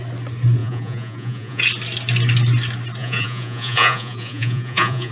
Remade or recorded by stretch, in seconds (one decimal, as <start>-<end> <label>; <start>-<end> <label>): 0.0-0.6 recorded; 0.6-1.6 remade; 1.6-3.0 recorded; 3.0-5.1 remade